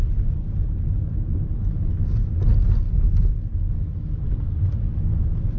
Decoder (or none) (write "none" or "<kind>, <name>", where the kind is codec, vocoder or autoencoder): none